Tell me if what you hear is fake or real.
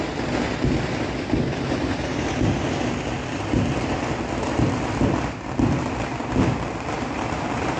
real